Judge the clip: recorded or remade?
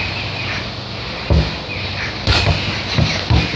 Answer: recorded